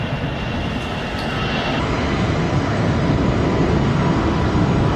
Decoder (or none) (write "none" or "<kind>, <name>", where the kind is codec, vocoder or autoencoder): none